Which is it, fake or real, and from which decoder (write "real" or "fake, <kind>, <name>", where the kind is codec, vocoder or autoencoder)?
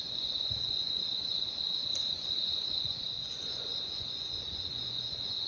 fake, vocoder, Vocos